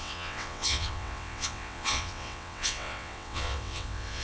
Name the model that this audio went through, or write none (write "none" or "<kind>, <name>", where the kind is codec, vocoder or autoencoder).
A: vocoder, WaveNeXt